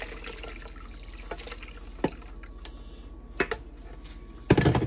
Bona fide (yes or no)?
yes